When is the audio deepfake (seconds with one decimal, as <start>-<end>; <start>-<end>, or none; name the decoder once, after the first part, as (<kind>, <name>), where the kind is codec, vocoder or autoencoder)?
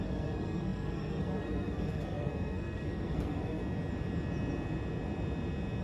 0.0-3.6 (codec, SNAC)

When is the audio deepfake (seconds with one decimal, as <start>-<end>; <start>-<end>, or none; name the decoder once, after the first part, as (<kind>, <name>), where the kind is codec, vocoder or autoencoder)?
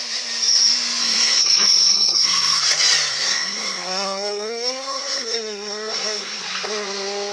1.0-2.6 (codec, SNAC); 3.1-6.4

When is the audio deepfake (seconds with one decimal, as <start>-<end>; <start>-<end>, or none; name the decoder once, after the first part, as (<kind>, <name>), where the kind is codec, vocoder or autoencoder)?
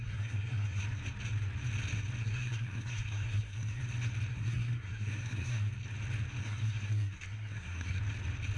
0.0-0.8 (codec, SNAC); 2.2-3.8; 4.3-5.7; 6.4-8.0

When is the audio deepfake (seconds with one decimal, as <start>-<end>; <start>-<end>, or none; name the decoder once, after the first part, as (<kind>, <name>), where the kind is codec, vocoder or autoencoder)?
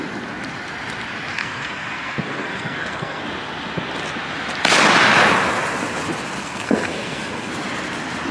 1.3-3.2 (codec, SNAC); 6.4-7.5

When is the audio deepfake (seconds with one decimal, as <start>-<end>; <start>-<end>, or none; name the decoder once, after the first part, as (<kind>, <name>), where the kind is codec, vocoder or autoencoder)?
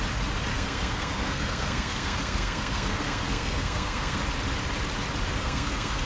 0.5-4.2 (codec, SNAC); 5.4-6.1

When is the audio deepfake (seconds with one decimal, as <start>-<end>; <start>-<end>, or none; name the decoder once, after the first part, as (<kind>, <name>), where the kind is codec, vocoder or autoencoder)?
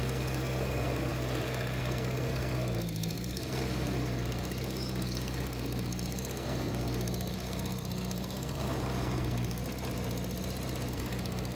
0.0-9.6 (codec, SNAC); 10.9-11.5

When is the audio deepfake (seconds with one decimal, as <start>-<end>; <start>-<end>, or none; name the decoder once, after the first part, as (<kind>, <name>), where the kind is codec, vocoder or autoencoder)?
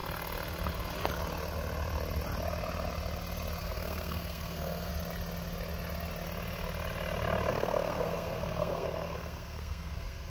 3.6-4.9 (codec, SNAC); 7.5-10.3